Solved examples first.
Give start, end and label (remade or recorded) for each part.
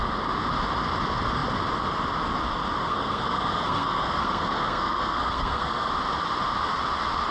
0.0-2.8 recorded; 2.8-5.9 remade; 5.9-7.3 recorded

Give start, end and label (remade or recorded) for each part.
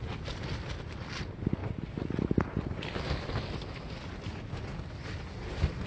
0.0-5.9 recorded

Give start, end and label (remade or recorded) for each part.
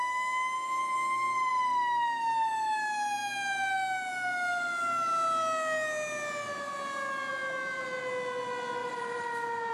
0.0-8.8 recorded; 8.8-9.7 remade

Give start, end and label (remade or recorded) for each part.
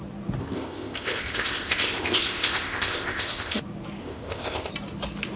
0.0-0.4 recorded; 0.4-3.6 remade; 3.6-4.0 recorded; 4.0-4.7 remade; 4.7-5.4 recorded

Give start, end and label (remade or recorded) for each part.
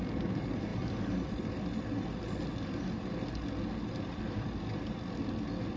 0.0-5.8 recorded